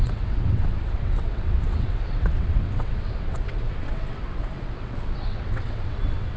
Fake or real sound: fake